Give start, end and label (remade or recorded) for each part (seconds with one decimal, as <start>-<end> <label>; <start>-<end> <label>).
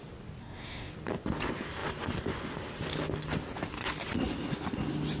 0.0-0.4 recorded; 0.4-0.9 remade; 0.9-5.2 recorded